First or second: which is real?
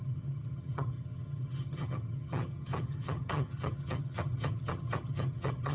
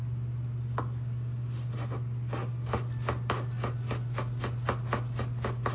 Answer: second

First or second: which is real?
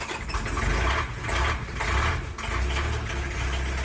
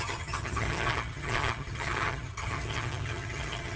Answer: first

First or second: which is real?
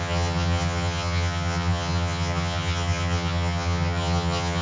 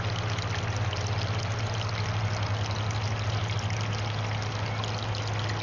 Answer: second